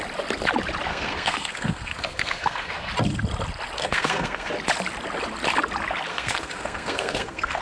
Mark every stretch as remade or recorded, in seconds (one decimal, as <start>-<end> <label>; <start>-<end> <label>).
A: 0.0-0.9 recorded; 0.9-2.9 remade; 2.9-3.8 recorded; 3.8-4.5 remade; 4.5-6.1 recorded; 6.1-7.6 remade